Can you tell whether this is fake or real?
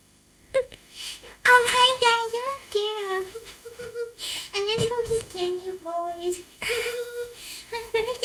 fake